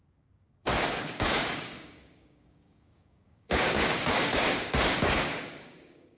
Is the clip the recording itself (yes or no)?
no